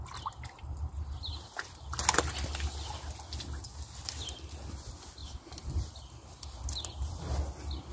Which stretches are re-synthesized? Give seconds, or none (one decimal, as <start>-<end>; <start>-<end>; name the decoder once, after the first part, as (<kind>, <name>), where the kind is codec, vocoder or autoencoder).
5.2-5.8 (vocoder, BigVGAN v2)